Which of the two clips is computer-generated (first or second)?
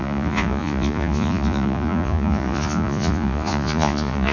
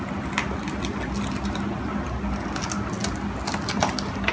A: first